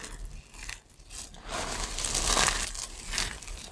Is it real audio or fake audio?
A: real